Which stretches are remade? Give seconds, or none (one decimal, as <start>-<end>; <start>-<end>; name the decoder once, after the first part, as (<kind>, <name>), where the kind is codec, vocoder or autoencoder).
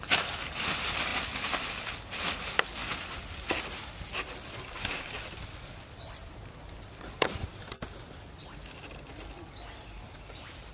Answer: none